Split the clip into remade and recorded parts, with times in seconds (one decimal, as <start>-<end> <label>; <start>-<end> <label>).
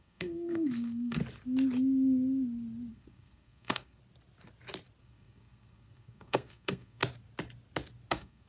0.0-1.2 remade; 1.2-2.9 recorded; 2.9-4.0 remade; 4.0-5.0 recorded; 5.0-7.0 remade; 7.0-8.1 recorded; 8.1-8.5 remade